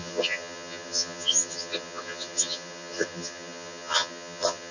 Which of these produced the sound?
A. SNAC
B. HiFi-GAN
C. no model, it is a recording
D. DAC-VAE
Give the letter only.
B